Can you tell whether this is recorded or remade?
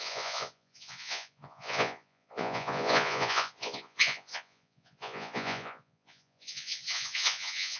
remade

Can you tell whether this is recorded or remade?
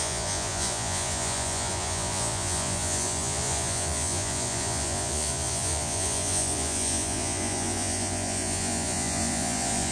remade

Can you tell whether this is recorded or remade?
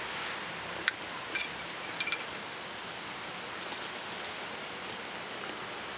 recorded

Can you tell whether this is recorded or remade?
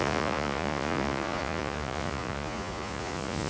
remade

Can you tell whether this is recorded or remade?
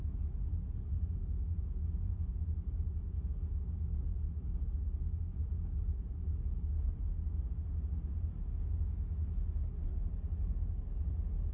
recorded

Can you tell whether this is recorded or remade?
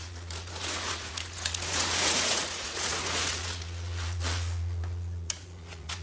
remade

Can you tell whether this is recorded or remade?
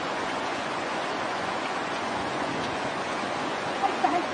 remade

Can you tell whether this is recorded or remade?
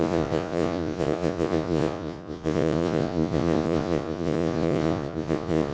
remade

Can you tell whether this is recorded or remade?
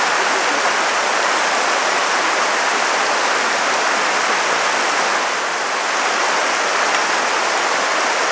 recorded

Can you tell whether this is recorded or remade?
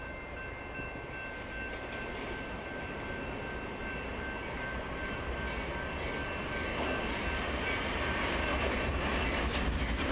recorded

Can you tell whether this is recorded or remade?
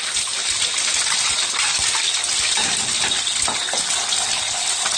recorded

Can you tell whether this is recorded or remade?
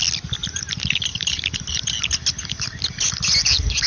recorded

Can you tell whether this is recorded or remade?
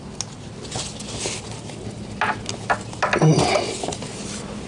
recorded